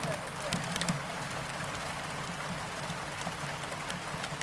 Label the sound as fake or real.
real